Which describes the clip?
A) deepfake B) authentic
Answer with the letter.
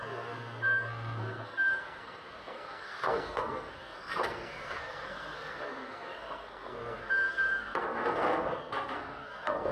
A